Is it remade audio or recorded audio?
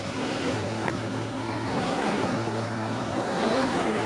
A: remade